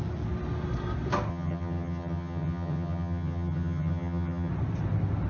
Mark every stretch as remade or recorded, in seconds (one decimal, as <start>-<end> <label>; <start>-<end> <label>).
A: 0.0-1.3 recorded; 1.3-4.5 remade; 4.5-5.3 recorded